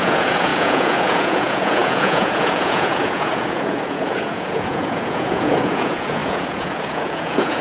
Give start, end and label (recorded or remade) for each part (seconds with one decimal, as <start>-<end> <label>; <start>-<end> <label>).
0.0-7.6 remade